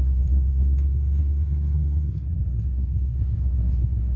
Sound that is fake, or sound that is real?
fake